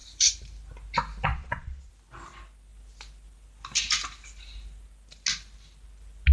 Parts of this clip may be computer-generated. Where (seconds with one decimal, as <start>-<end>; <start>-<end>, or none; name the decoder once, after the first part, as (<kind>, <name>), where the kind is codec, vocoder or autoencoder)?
1.3-1.9 (vocoder, Vocos)